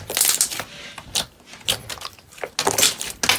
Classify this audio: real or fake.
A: real